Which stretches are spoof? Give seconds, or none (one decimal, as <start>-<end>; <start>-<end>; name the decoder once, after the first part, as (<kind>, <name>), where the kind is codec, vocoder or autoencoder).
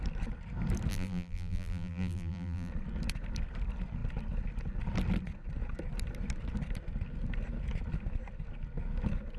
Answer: 0.9-2.7 (vocoder, BigVGAN v2)